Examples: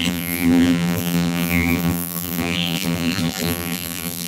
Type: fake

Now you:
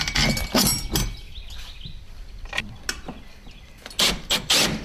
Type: real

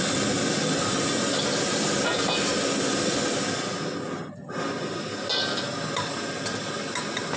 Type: real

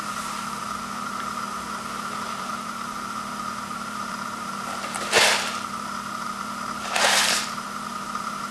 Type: fake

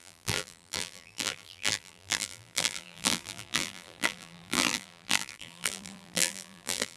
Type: fake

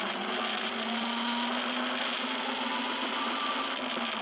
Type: real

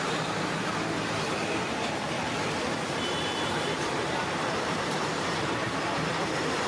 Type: fake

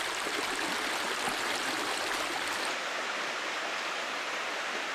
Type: real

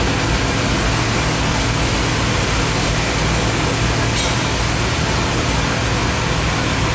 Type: real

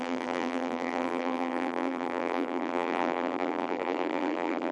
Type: fake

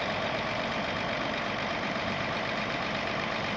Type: fake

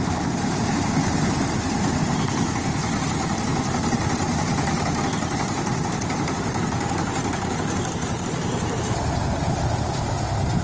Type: fake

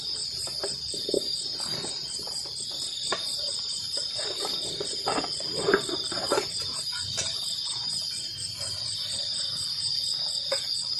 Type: fake